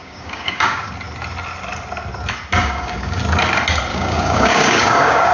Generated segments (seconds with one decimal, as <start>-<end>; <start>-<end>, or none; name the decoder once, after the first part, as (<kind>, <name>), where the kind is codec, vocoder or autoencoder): 0.0-0.9 (codec, DAC); 2.6-3.2; 3.9-5.3